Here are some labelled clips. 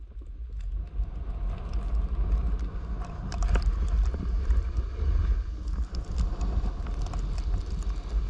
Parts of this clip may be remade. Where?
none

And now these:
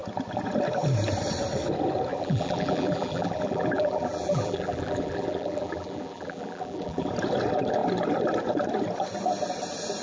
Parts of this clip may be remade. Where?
2.1-7.1

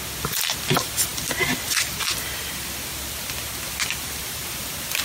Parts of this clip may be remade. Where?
4.2-5.0

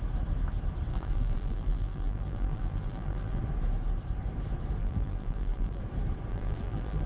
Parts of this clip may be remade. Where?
0.9-3.4; 4.8-5.8; 6.3-7.1

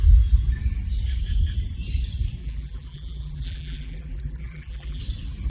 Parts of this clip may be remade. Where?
2.4-5.0

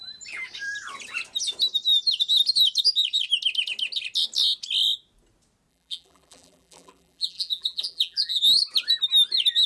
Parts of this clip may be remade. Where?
5.7-8.4